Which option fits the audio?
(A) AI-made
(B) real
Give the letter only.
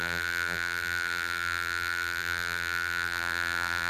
A